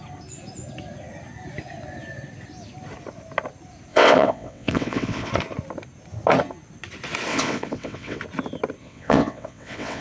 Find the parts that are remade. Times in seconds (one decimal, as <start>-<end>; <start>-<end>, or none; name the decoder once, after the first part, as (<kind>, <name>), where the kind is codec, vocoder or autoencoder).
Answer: 3.9-5.3 (vocoder, WaveNeXt); 7.3-8.2; 8.8-10.0